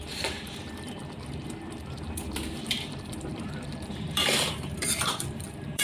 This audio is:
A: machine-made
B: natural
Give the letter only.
A